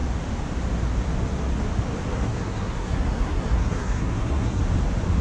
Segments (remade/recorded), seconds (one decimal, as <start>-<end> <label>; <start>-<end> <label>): 0.0-2.1 recorded; 2.1-4.6 remade; 4.6-5.2 recorded